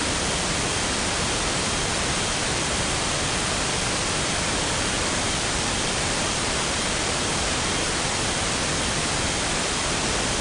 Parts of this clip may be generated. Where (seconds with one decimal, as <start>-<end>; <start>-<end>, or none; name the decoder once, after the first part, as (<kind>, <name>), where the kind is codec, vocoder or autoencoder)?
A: 0.0-10.4 (vocoder, BigVGAN v2)